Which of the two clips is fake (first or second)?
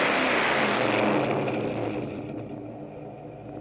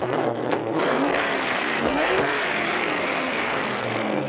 second